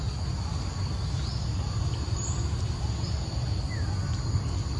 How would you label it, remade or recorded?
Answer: recorded